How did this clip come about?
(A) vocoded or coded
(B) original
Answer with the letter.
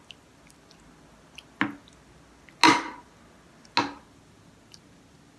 B